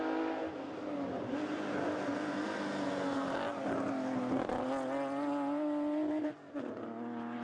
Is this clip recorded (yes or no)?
yes